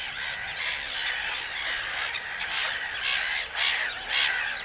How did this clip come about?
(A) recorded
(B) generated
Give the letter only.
A